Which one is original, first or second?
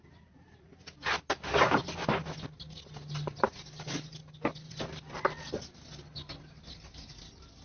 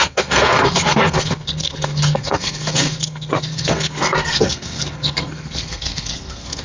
first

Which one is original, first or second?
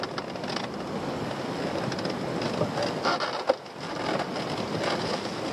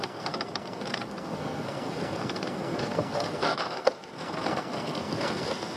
first